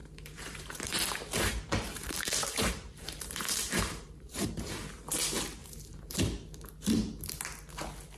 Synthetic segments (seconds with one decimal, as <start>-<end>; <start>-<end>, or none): 0.0-4.7; 5.6-6.2